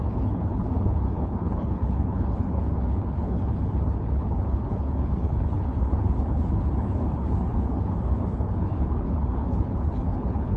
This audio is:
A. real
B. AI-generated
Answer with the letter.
B